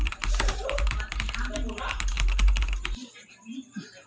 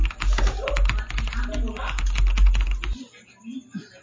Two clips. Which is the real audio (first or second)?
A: second